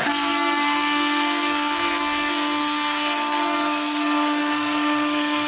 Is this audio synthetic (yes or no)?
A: yes